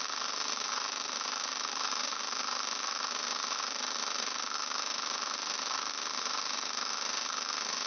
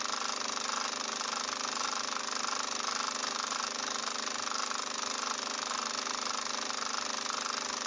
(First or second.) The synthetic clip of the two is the first